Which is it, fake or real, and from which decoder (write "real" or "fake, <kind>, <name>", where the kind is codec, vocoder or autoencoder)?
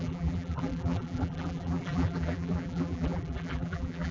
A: fake, vocoder, BigVGAN v2